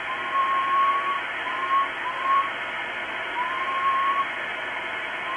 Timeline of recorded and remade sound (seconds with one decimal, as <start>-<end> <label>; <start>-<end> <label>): 0.0-0.4 recorded; 0.4-1.2 remade; 1.2-2.1 recorded; 2.1-5.4 remade